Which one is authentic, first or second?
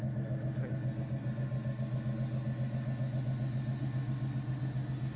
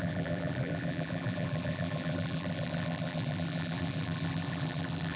first